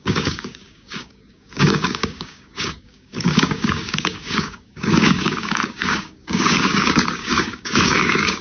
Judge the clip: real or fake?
fake